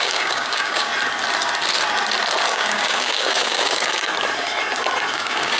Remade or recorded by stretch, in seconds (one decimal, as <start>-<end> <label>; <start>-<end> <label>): 0.0-0.9 remade; 0.9-2.5 recorded; 2.5-4.1 remade; 4.1-5.1 recorded; 5.1-5.6 remade

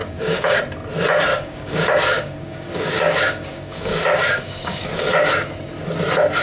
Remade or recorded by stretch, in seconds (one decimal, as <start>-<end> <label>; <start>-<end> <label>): 0.0-0.6 remade; 0.6-1.3 recorded; 1.3-5.1 remade; 5.1-6.4 recorded

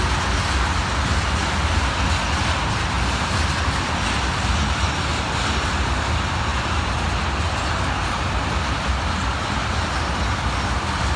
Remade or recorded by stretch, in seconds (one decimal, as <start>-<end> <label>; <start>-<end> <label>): 0.0-11.2 recorded

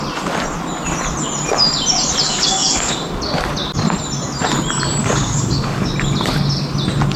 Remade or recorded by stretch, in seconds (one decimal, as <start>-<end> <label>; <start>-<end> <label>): 0.0-2.3 recorded; 2.3-2.9 remade; 2.9-5.0 recorded; 5.0-5.9 remade; 5.9-7.2 recorded

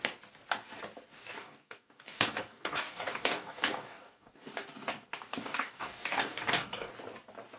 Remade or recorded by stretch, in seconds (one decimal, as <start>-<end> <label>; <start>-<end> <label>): 0.0-1.1 recorded; 1.1-4.4 remade; 4.4-5.3 recorded; 5.3-6.9 remade; 6.9-7.6 recorded

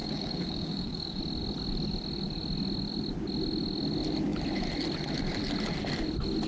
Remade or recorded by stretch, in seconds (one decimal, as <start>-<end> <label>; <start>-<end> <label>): 0.0-1.2 remade; 1.2-6.5 recorded

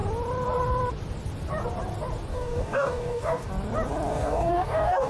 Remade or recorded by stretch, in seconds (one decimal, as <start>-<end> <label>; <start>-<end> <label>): 0.0-2.3 recorded; 2.3-3.5 remade; 3.5-4.1 recorded; 4.1-5.1 remade

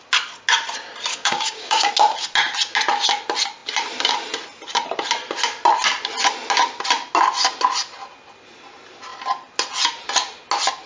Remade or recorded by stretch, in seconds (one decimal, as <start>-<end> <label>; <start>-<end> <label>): 0.0-1.1 recorded; 1.1-1.9 remade; 1.9-10.9 recorded